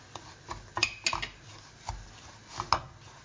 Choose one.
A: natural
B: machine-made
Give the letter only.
A